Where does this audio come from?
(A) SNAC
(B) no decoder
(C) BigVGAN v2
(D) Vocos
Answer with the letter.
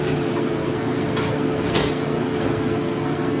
A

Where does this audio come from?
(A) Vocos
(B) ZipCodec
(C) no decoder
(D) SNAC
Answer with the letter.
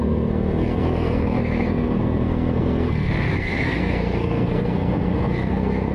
D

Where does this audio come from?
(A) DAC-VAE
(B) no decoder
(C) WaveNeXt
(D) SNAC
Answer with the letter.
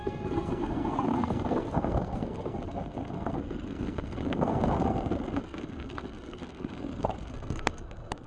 D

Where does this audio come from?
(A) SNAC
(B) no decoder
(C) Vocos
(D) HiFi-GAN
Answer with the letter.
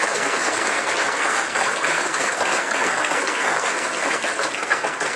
A